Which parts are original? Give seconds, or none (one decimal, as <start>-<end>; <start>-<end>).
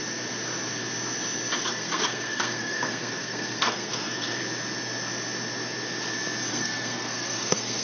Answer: 0.0-1.6; 4.4-6.5